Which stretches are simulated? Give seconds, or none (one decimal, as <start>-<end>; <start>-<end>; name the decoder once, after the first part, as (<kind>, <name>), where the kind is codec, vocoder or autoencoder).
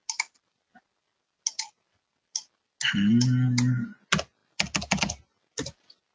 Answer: none